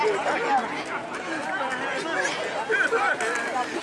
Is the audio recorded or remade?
recorded